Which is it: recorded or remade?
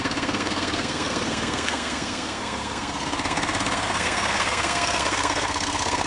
remade